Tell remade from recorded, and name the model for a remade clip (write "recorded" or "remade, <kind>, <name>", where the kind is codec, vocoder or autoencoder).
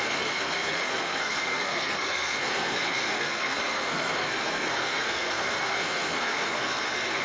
remade, codec, SNAC